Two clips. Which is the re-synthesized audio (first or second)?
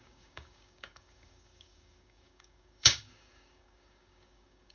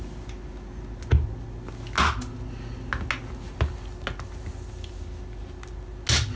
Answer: first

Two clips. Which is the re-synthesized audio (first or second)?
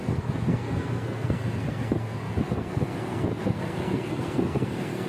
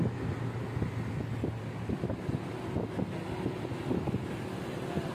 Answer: first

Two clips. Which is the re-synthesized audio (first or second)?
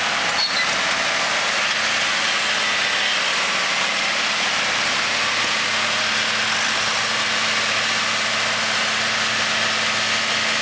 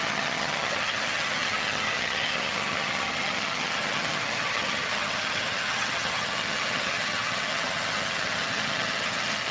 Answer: second